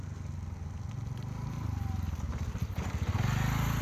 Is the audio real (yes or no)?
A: yes